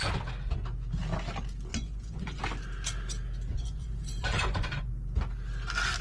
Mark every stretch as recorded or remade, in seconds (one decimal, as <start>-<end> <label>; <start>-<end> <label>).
0.0-1.7 recorded; 1.7-2.4 remade; 2.4-3.5 recorded; 3.5-4.9 remade; 4.9-6.0 recorded